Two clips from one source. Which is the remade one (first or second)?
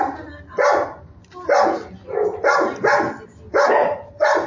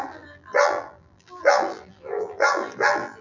second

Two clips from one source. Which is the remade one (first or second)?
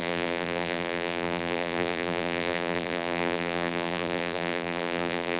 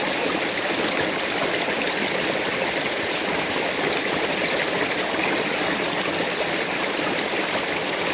first